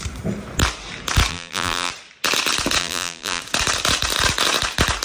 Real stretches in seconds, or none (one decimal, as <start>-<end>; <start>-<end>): 0.0-1.3; 1.9-2.8; 3.4-5.0